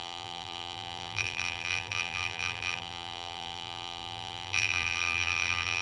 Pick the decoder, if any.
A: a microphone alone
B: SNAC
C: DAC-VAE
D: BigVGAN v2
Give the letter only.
D